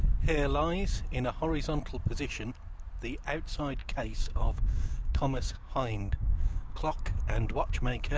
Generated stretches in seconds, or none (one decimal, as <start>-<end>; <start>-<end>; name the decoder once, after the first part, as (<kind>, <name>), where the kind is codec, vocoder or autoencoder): 3.8-8.2 (codec, DAC)